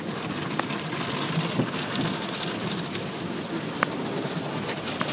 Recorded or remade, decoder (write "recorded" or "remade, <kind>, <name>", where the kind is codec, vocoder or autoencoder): recorded